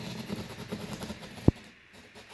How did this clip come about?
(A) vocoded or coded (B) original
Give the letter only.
B